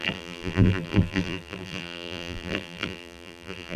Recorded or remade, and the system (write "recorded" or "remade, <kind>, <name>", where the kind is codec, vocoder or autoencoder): remade, vocoder, BigVGAN v2